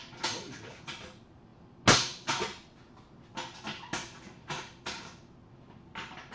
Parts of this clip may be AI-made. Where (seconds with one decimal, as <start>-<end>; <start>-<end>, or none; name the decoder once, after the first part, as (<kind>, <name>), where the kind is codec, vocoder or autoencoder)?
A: none